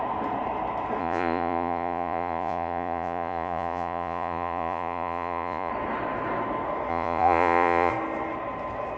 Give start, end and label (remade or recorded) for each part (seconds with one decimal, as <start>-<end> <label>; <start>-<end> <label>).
0.0-1.0 recorded; 1.0-5.7 remade; 5.7-6.9 recorded; 6.9-7.9 remade; 7.9-9.0 recorded